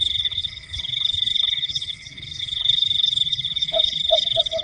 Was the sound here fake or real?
fake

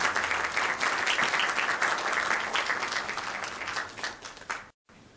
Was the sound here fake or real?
real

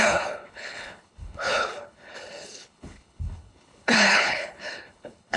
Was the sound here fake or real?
fake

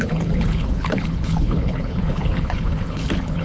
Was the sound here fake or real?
fake